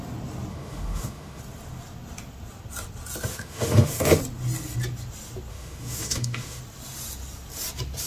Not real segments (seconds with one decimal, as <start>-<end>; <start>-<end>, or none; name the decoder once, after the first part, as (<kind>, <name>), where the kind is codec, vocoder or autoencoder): 0.5-1.4 (autoencoder, DAC-VAE); 3.3-4.2; 5.5-6.6